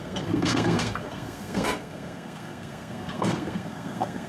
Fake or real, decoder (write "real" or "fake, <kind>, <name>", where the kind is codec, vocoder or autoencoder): fake, codec, SNAC